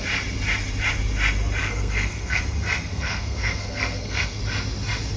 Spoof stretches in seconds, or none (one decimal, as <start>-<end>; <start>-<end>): 1.6-2.4; 2.9-4.4